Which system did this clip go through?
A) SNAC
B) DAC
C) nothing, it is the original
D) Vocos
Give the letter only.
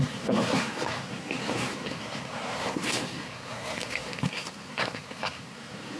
A